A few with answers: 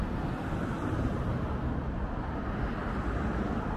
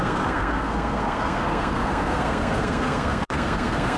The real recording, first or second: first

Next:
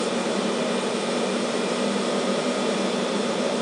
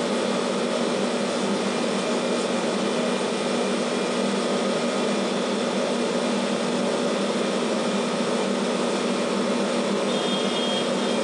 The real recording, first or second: second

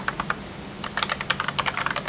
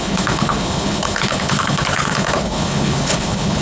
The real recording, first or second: first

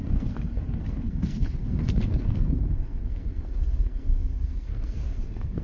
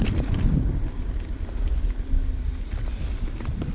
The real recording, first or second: second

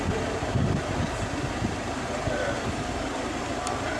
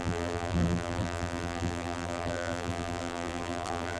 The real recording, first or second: first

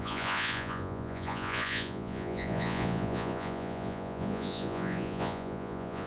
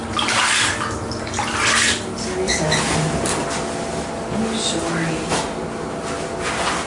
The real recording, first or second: second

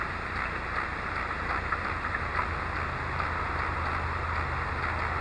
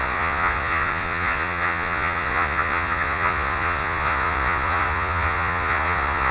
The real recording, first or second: first